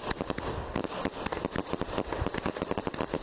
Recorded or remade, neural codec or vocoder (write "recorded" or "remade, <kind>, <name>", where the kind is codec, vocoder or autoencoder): recorded